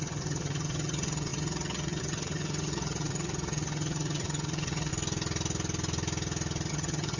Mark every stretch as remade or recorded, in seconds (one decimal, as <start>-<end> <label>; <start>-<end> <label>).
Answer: 0.0-4.9 remade; 4.9-6.7 recorded; 6.7-7.2 remade